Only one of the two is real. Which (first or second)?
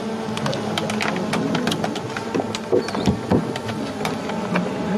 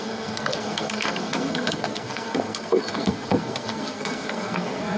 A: first